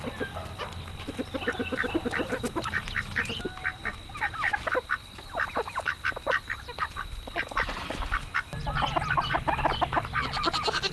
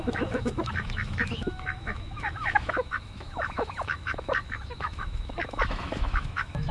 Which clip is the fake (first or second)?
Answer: second